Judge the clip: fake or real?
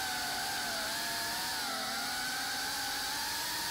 fake